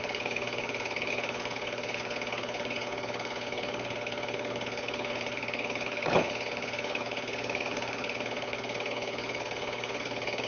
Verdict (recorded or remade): remade